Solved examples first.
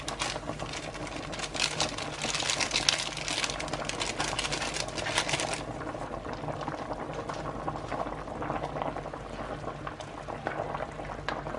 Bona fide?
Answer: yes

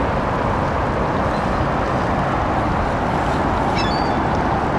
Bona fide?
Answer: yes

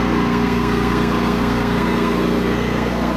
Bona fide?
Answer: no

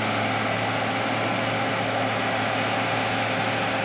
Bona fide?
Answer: yes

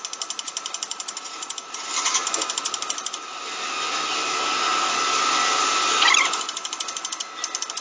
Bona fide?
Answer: yes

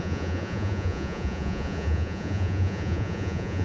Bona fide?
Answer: no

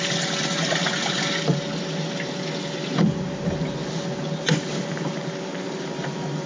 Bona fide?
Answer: yes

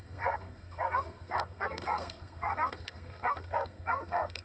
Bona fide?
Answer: no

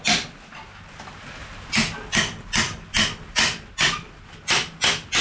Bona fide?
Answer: yes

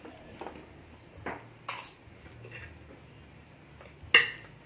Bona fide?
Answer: yes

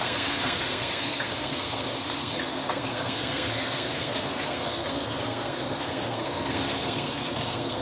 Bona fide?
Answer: no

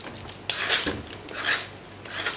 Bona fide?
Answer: yes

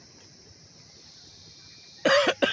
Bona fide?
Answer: yes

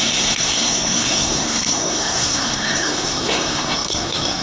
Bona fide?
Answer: no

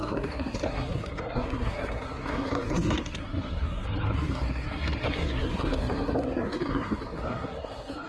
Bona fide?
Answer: no